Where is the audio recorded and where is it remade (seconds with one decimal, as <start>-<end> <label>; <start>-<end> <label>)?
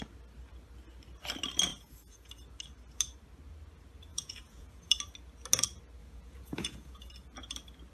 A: 0.0-1.7 recorded; 1.7-2.3 remade; 2.3-4.1 recorded; 4.1-4.9 remade; 4.9-6.0 recorded; 6.0-7.1 remade; 7.1-7.9 recorded